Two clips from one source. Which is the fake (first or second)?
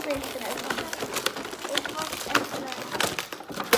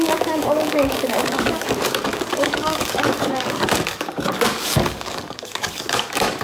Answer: second